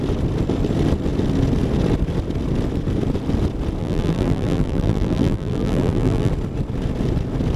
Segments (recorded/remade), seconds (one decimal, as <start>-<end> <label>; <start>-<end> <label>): 0.0-3.8 recorded; 3.8-6.3 remade; 6.3-7.6 recorded